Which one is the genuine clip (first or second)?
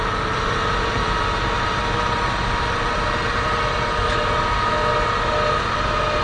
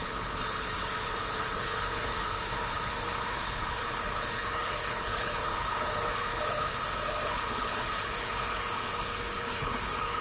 first